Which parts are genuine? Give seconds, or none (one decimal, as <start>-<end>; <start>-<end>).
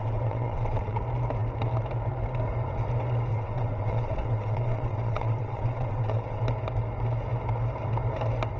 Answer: 1.0-3.3; 6.4-8.6